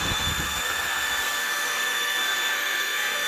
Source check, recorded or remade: remade